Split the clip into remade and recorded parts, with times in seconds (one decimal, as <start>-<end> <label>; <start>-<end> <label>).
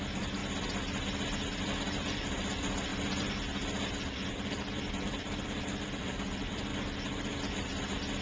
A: 0.0-0.4 remade; 0.4-1.6 recorded; 1.6-2.9 remade; 2.9-4.9 recorded; 4.9-6.7 remade; 6.7-8.2 recorded